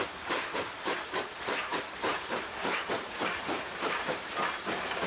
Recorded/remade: remade